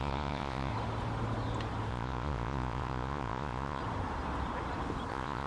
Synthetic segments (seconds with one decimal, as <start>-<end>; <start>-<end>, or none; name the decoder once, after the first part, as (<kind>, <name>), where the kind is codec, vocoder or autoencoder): 0.0-0.7 (vocoder, Vocos); 1.9-3.8; 5.1-5.5